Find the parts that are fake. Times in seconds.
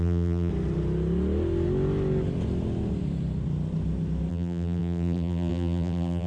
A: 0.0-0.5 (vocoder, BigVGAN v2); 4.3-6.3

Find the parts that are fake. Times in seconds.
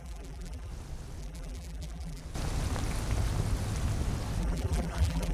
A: 0.0-0.7 (vocoder, BigVGAN v2); 1.2-2.2; 4.4-5.3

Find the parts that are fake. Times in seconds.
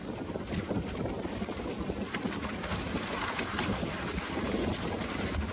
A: none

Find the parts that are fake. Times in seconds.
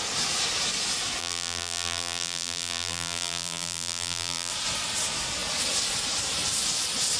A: 1.2-4.5 (vocoder, BigVGAN v2)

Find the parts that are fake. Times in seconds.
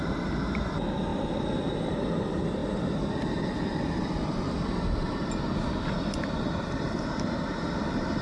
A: 1.1-2.2 (vocoder, BigVGAN v2)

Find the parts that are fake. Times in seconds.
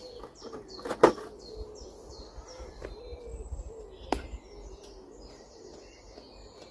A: none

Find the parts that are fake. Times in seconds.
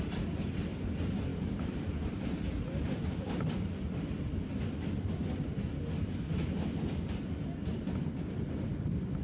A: 1.3-5.6 (vocoder, BigVGAN v2); 7.6-8.5